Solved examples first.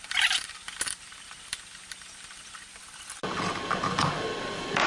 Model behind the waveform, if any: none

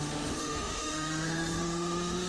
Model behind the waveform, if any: autoencoder, DAC-VAE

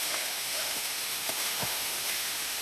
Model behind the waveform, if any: autoencoder, DAC-VAE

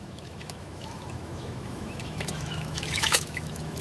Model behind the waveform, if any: autoencoder, DAC-VAE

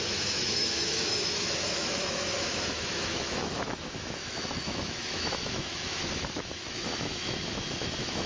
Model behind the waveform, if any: autoencoder, DAC-VAE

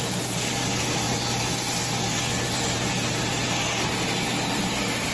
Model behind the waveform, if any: none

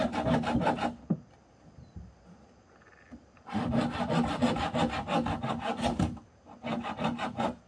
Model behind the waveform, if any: none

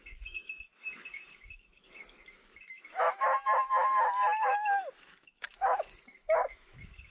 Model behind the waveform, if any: autoencoder, DAC-VAE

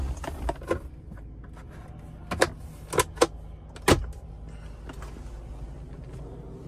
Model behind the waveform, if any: none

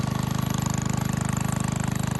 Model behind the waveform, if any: none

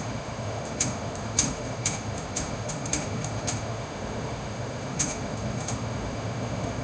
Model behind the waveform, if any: autoencoder, DAC-VAE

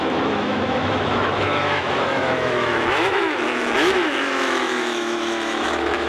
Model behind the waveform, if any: autoencoder, DAC-VAE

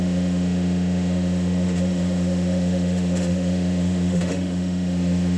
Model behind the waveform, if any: autoencoder, DAC-VAE